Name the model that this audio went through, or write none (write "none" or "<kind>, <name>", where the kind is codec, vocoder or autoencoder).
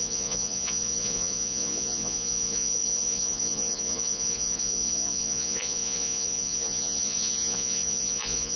vocoder, Vocos